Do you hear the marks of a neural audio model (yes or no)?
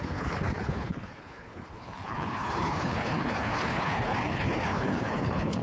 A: yes